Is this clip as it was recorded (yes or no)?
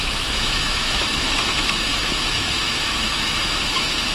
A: no